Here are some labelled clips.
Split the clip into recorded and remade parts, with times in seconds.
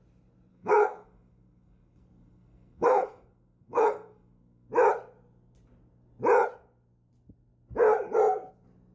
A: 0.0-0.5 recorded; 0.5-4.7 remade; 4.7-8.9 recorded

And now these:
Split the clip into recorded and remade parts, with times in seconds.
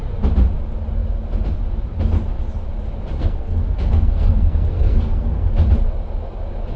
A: 0.0-3.2 recorded; 3.2-5.5 remade; 5.5-6.8 recorded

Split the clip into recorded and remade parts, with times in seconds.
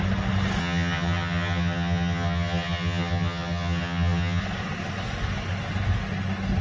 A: 0.0-0.6 recorded; 0.6-4.4 remade; 4.4-6.6 recorded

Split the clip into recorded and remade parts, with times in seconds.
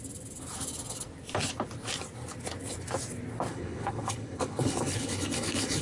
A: 0.0-3.5 recorded; 3.5-5.8 remade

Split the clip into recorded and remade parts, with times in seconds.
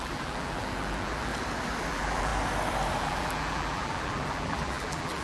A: 0.0-1.3 remade; 1.3-1.9 recorded; 1.9-2.3 remade; 2.3-3.0 recorded; 3.0-5.2 remade